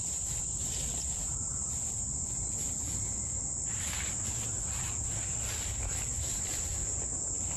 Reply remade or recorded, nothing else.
recorded